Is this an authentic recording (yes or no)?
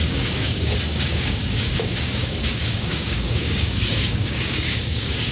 no